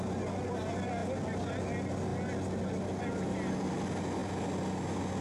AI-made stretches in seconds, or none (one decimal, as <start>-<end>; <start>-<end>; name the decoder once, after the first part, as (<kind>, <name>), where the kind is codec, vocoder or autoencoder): none